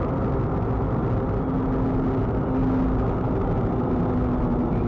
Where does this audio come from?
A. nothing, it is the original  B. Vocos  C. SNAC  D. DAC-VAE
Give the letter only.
A